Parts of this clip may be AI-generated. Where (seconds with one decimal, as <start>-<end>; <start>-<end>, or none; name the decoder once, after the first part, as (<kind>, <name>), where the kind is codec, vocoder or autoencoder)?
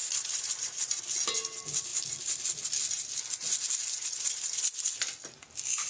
0.0-1.0 (vocoder, BigVGAN v2)